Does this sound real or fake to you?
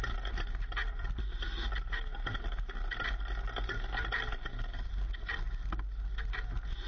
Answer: real